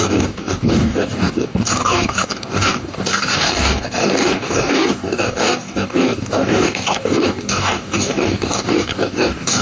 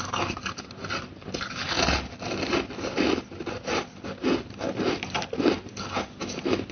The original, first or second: second